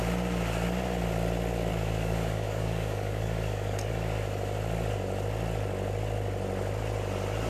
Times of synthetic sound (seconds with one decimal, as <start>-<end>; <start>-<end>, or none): 1.7-3.9